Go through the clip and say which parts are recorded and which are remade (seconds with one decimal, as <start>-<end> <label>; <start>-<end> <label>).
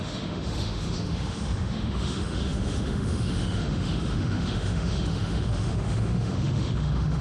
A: 0.0-7.2 remade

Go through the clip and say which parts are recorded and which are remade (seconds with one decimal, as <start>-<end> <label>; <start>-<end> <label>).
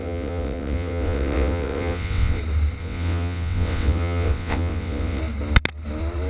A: 0.0-2.4 remade; 2.4-2.8 recorded; 2.8-5.2 remade; 5.2-6.3 recorded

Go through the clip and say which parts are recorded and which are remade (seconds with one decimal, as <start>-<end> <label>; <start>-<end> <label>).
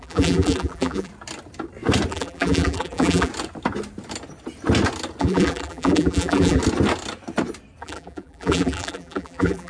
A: 0.0-1.1 remade; 1.1-2.1 recorded; 2.1-3.3 remade; 3.3-5.2 recorded; 5.2-6.6 remade; 6.6-7.8 recorded; 7.8-9.7 remade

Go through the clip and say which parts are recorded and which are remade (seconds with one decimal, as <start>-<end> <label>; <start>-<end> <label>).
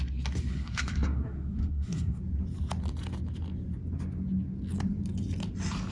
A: 0.0-0.5 recorded; 0.5-2.2 remade; 2.2-5.9 recorded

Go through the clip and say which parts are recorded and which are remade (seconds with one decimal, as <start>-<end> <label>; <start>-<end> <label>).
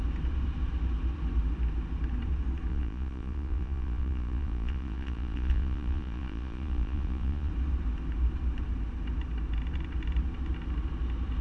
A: 0.0-2.7 recorded; 2.7-7.5 remade; 7.5-11.4 recorded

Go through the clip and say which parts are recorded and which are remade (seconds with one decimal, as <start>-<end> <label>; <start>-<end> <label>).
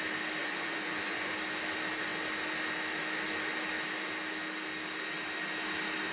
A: 0.0-0.4 recorded; 0.4-1.3 remade; 1.3-6.1 recorded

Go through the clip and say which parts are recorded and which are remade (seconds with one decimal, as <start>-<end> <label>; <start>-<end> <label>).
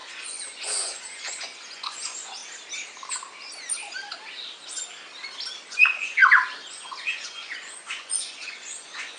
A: 0.0-2.4 remade; 2.4-5.7 recorded; 5.7-6.2 remade; 6.2-6.7 recorded; 6.7-9.2 remade